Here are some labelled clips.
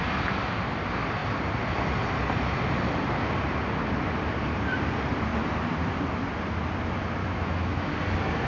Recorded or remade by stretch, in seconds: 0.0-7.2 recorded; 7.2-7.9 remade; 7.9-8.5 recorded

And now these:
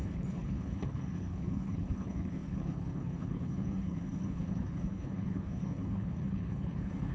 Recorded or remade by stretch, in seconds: 0.0-7.1 remade

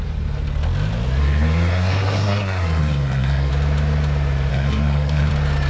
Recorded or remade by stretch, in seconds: 0.0-1.2 recorded; 1.2-3.5 remade; 3.5-4.5 recorded; 4.5-5.3 remade; 5.3-5.7 recorded

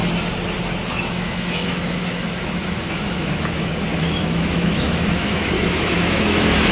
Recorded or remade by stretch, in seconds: 0.0-1.1 recorded; 1.1-6.7 remade

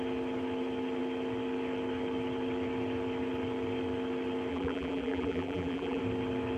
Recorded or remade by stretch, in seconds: 0.0-4.5 recorded; 4.5-6.0 remade; 6.0-6.6 recorded

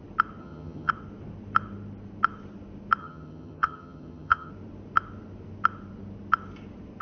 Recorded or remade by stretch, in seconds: 0.0-0.4 recorded; 0.4-0.9 remade; 0.9-3.0 recorded; 3.0-4.5 remade; 4.5-7.0 recorded

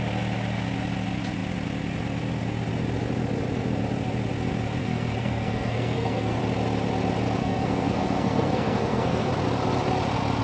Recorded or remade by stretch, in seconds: 0.0-4.8 recorded; 4.8-6.4 remade; 6.4-7.4 recorded; 7.4-9.3 remade; 9.3-10.4 recorded

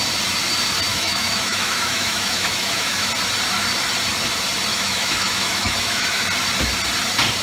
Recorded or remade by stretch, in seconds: 0.0-0.9 recorded; 0.9-3.1 remade; 3.1-4.7 recorded; 4.7-6.2 remade; 6.2-7.4 recorded